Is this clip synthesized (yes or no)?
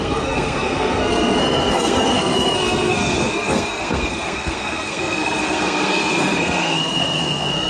yes